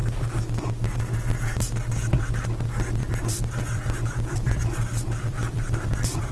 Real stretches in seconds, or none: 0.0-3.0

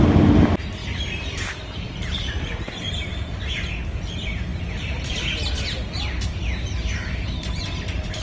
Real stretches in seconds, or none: 0.0-0.8; 3.4-8.2

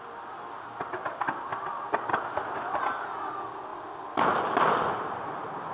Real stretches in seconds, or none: 0.0-3.7

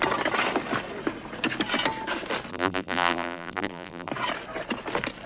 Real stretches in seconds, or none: 0.0-2.5; 4.1-5.3

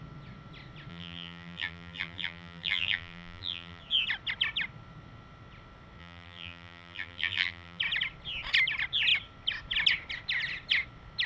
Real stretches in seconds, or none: 0.0-0.9; 3.8-6.0; 7.8-11.3

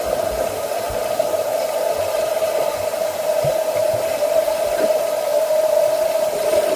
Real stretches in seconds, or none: 0.0-3.8; 5.7-6.8

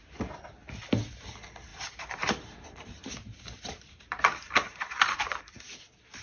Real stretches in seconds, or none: 0.0-1.7; 5.4-6.2

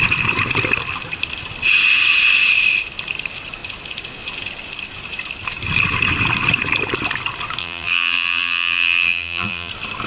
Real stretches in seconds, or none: 0.0-7.6; 9.7-10.1